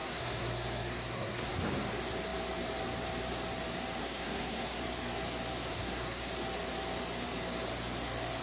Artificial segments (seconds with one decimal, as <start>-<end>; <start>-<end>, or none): 0.0-1.5; 4.0-4.8; 5.7-6.3